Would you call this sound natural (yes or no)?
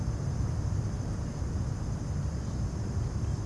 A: yes